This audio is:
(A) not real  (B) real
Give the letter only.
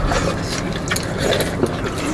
B